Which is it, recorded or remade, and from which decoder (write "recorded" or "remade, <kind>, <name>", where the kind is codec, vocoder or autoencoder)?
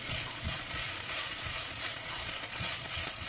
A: remade, vocoder, Vocos